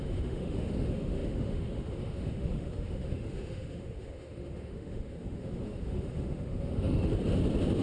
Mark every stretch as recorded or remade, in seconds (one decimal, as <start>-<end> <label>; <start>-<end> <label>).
0.0-7.1 remade; 7.1-7.8 recorded